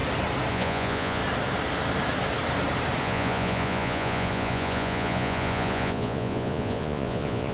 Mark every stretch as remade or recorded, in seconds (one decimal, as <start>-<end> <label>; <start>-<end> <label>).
0.0-0.5 recorded; 0.5-1.2 remade; 1.2-3.0 recorded; 3.0-7.5 remade